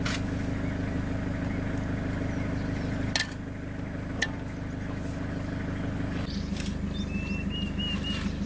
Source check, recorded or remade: recorded